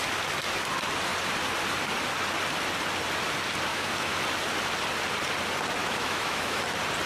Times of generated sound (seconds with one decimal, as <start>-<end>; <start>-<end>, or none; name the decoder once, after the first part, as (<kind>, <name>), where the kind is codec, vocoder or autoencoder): 3.7-4.2 (autoencoder, DAC-VAE); 5.8-6.6